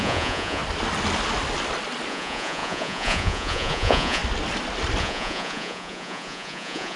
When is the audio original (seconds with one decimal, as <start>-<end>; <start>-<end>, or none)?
0.6-2.1; 4.2-5.0